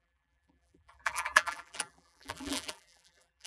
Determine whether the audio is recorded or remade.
remade